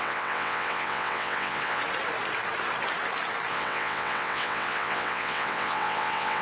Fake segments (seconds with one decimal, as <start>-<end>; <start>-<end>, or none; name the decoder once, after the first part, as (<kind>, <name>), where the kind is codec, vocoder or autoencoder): 0.0-1.8 (vocoder, WaveNeXt); 3.5-6.4